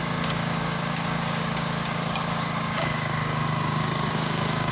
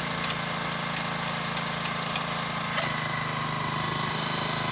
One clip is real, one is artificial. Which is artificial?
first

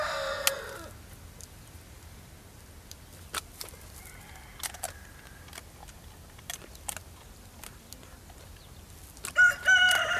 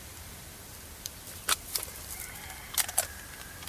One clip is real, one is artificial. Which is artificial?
second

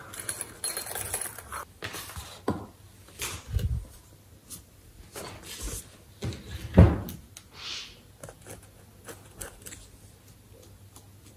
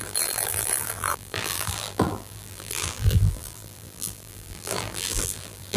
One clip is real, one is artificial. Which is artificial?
second